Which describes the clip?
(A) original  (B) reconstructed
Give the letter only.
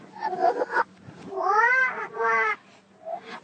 A